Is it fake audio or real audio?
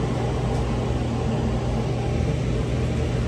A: real